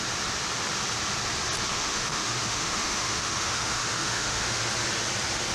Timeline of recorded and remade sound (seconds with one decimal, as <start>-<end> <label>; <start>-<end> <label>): 0.0-1.7 recorded; 1.7-4.6 remade; 4.6-5.5 recorded